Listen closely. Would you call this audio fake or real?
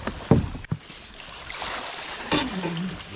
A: real